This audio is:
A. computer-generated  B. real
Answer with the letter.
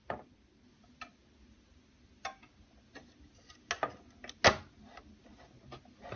B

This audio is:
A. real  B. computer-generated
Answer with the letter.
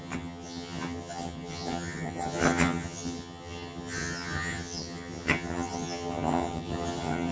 B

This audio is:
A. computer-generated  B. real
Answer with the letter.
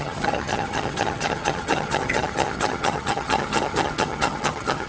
A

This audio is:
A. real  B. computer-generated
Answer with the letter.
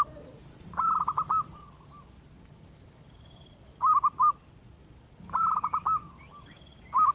A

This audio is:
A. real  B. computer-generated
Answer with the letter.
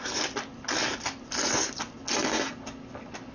A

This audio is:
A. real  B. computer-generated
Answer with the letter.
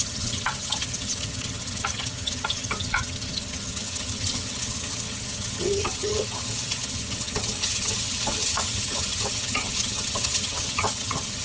B